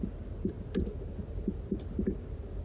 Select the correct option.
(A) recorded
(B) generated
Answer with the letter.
A